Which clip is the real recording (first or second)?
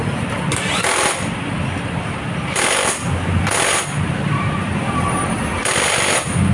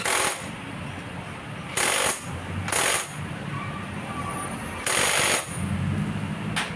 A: second